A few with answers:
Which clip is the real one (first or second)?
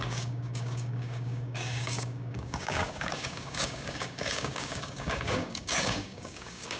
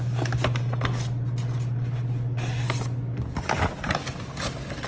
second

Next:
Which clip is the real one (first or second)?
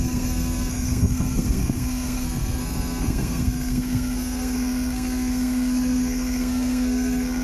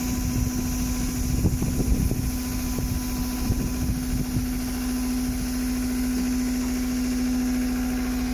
second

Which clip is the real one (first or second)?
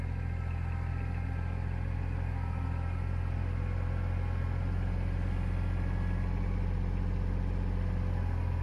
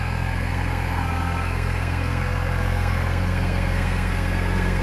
first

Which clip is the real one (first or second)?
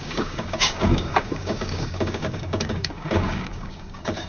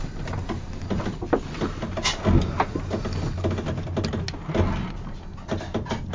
second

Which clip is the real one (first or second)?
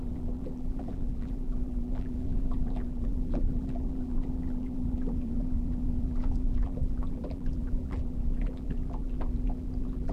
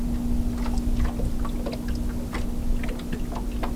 second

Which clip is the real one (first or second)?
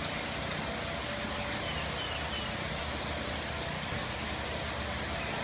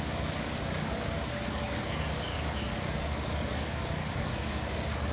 first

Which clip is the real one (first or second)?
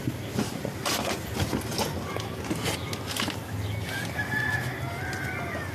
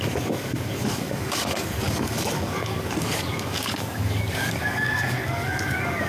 first